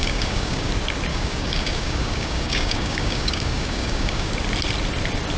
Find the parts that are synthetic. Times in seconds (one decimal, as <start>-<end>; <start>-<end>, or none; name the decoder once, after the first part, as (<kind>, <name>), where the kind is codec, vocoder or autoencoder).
0.0-0.7 (codec, DAC); 1.1-4.3